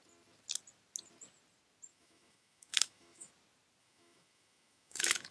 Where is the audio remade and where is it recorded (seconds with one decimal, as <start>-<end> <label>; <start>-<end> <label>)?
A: 0.0-1.9 recorded; 1.9-3.3 remade; 3.3-3.8 recorded; 3.8-5.3 remade